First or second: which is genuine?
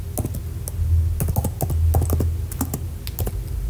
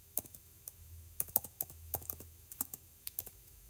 first